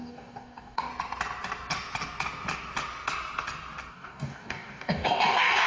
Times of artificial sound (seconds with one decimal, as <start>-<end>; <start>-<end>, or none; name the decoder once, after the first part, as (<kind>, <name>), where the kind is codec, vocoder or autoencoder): 0.0-0.9 (codec, DAC); 3.9-5.7

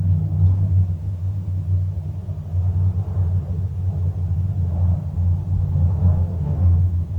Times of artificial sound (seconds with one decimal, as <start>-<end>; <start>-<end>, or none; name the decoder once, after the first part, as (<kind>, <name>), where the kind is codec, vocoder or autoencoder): 0.9-1.6 (autoencoder, DAC-VAE); 6.3-7.2

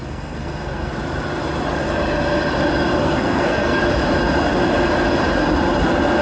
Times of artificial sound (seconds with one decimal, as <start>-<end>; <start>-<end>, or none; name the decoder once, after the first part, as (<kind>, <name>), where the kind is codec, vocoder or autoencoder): 0.0-0.9 (codec, SNAC); 3.0-3.8

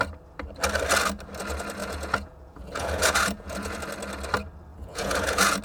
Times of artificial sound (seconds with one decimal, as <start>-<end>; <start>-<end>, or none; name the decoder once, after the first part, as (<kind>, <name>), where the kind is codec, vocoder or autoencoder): 1.8-3.8 (vocoder, Vocos); 4.7-5.6

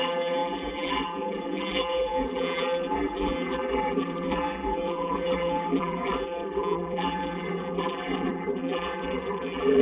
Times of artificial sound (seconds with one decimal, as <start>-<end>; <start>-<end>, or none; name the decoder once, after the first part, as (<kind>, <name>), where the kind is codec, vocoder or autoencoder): 0.0-9.8 (vocoder, BigVGAN v2)

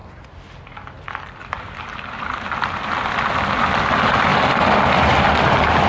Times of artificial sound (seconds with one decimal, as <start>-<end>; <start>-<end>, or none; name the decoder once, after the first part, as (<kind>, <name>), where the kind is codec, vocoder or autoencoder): 4.3-5.1 (vocoder, BigVGAN v2)